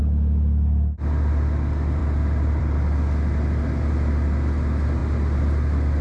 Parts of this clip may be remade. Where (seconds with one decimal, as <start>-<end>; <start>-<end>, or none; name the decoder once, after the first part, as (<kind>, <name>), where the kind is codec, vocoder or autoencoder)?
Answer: 2.0-2.6 (vocoder, BigVGAN v2)